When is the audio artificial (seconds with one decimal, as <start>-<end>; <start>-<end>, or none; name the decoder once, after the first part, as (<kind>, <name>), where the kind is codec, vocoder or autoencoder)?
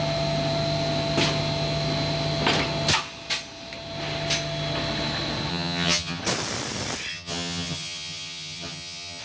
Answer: 5.5-6.2 (vocoder, HiFi-GAN); 7.1-9.2